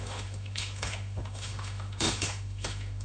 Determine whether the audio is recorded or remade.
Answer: remade